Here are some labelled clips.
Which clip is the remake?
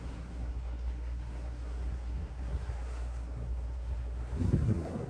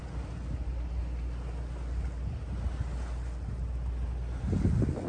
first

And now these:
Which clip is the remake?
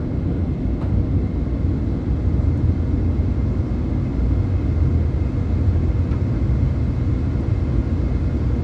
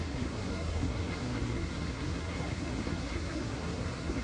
second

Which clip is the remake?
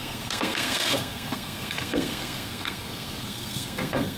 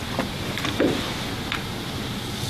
first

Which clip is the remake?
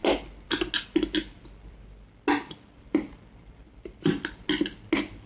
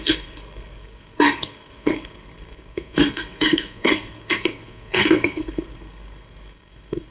second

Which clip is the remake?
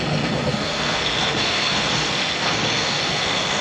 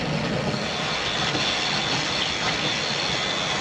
first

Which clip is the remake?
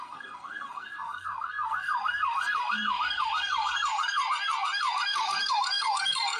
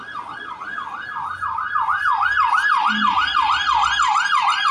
first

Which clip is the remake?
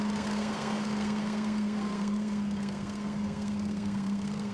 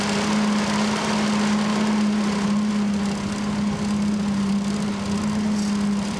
first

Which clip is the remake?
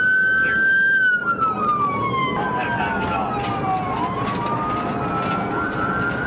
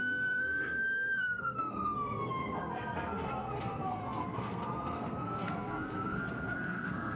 second